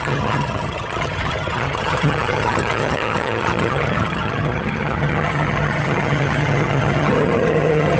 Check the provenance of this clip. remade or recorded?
remade